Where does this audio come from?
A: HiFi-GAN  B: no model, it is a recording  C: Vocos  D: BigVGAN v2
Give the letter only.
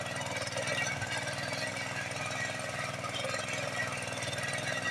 B